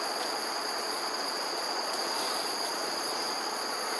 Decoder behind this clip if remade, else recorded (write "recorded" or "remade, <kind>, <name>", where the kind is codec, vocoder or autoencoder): remade, vocoder, Vocos